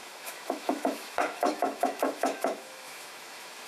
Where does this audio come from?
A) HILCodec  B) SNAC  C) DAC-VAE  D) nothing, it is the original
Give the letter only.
C